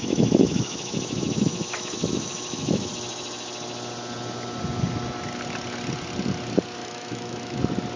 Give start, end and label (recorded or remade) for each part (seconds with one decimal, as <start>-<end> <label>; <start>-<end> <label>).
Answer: 0.0-2.9 remade; 2.9-6.8 recorded; 6.8-7.6 remade; 7.6-8.0 recorded